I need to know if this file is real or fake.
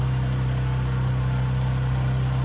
real